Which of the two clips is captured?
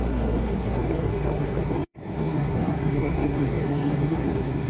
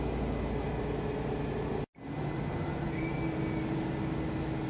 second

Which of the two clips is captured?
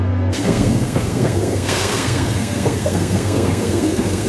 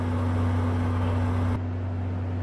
second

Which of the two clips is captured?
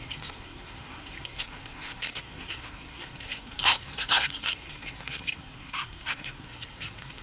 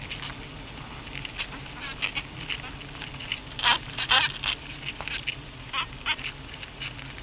second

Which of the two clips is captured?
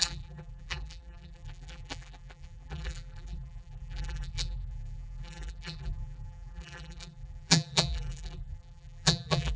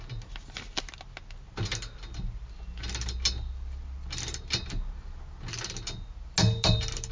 second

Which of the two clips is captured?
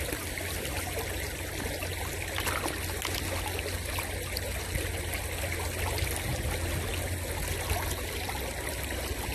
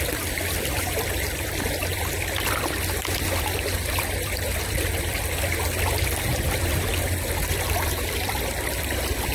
first